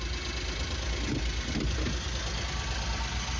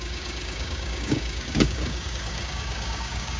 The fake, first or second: second